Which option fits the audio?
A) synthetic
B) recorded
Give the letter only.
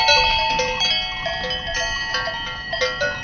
B